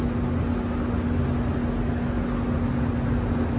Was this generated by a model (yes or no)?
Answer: no